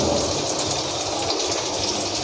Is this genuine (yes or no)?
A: yes